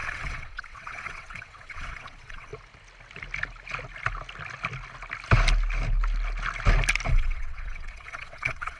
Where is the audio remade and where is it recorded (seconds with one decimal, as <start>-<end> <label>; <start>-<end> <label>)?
0.0-2.5 remade; 2.5-7.1 recorded; 7.1-8.8 remade